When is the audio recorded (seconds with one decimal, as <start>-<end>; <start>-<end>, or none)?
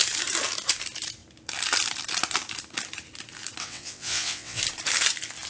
0.0-3.6; 4.6-5.5